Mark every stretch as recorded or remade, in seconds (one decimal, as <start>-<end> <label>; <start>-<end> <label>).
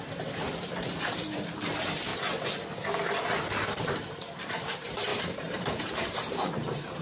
0.0-2.1 remade; 2.1-3.7 recorded; 3.7-7.0 remade